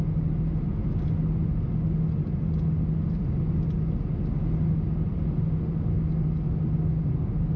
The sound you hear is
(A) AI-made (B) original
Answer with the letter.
B